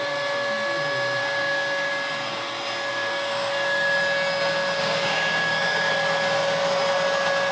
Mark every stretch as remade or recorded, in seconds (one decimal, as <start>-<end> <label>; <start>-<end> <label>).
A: 0.0-1.2 recorded; 1.2-1.9 remade; 1.9-2.9 recorded; 2.9-3.5 remade; 3.5-4.8 recorded; 4.8-5.9 remade; 5.9-7.5 recorded